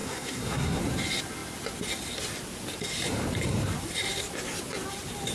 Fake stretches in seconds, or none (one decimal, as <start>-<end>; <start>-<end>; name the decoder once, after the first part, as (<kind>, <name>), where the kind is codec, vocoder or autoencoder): 0.0-0.8 (codec, SNAC)